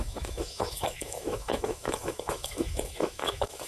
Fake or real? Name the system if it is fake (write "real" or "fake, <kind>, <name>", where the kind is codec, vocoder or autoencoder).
fake, autoencoder, DAC-VAE